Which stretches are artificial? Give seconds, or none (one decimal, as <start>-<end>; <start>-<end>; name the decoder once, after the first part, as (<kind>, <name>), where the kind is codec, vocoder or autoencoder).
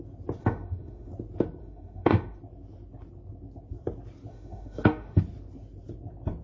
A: 0.4-1.1 (autoencoder, DAC-VAE); 1.6-2.4; 4.3-5.2